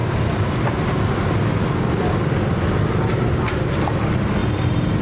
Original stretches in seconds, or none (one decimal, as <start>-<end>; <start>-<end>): 0.0-5.0